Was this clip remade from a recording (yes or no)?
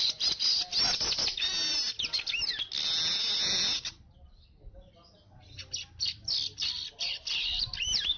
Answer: no